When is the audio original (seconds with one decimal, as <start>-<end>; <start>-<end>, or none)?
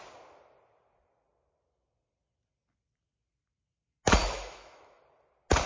0.0-4.2; 5.0-5.7